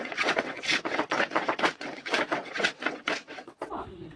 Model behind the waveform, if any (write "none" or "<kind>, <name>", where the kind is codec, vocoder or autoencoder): vocoder, WaveNeXt